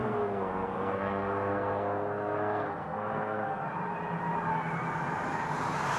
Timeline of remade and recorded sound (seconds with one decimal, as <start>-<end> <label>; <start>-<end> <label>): 0.0-3.6 remade; 3.6-6.0 recorded